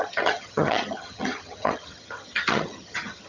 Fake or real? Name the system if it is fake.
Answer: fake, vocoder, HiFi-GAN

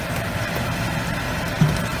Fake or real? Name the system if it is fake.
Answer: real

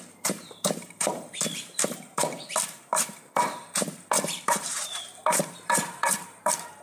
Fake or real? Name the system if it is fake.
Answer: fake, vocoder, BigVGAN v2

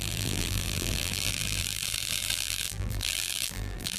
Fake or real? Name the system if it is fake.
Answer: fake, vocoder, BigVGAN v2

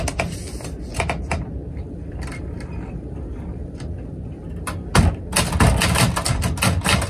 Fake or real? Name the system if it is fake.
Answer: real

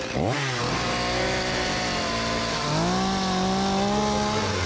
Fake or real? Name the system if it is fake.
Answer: real